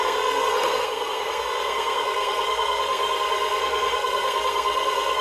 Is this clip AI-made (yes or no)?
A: yes